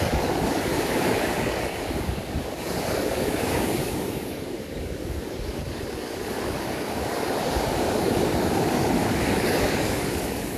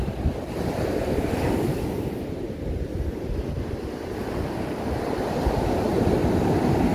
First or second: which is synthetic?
first